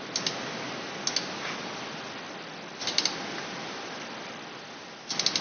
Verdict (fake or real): real